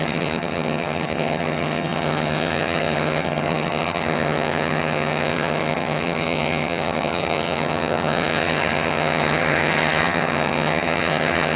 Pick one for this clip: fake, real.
fake